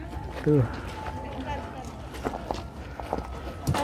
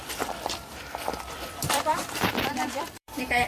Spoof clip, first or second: second